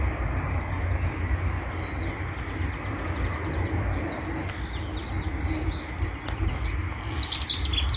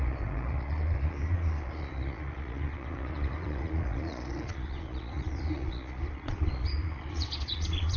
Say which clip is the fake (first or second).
second